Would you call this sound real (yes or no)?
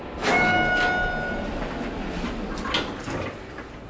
yes